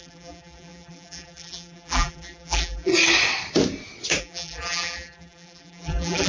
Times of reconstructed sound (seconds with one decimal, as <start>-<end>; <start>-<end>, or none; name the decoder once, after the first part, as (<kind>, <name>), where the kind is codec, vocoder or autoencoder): 0.0-2.9 (vocoder, BigVGAN v2); 4.2-6.3